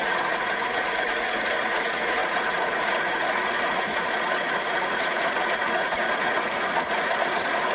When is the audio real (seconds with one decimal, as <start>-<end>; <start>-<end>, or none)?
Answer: none